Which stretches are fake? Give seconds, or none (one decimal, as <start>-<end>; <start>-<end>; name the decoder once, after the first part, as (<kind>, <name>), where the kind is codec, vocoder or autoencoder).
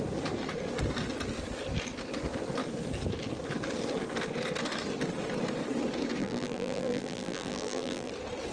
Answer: 6.2-8.1 (vocoder, BigVGAN v2)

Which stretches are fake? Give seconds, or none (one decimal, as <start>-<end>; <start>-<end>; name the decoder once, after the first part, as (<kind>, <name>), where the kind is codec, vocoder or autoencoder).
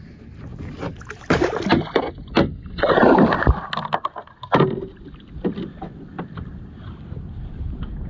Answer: none